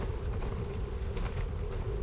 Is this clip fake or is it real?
real